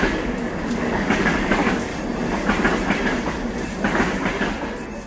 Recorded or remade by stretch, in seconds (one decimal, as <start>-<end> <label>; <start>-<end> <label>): 0.0-1.9 remade; 1.9-5.1 recorded